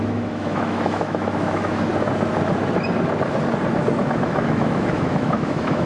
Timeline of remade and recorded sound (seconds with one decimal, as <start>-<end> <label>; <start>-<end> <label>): 0.0-1.9 remade; 1.9-4.0 recorded; 4.0-5.9 remade